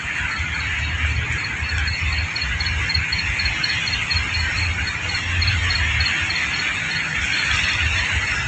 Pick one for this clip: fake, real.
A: real